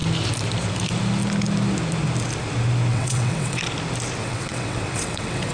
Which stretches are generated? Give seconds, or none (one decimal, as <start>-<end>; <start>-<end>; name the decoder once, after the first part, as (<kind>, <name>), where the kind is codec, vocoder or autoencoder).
2.9-3.6 (vocoder, WaveNeXt); 4.2-5.5